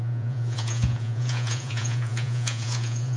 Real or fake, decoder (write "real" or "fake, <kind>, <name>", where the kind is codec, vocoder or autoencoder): fake, vocoder, Vocos